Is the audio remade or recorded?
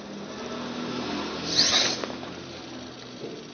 recorded